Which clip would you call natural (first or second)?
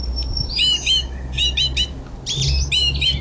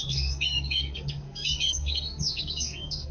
first